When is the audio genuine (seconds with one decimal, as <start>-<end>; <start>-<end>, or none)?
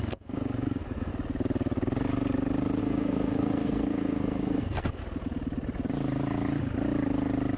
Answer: 1.1-2.8; 5.0-7.6